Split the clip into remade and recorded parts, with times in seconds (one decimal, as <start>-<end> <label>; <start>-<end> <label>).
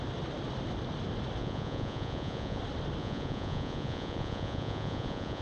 0.0-1.4 recorded; 1.4-2.6 remade; 2.6-3.0 recorded; 3.0-5.4 remade